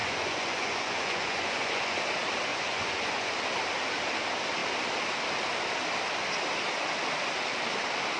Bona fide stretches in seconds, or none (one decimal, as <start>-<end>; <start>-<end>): 2.0-2.5; 3.3-8.2